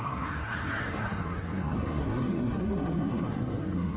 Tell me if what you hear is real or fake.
fake